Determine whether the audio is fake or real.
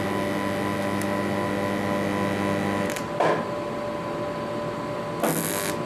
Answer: real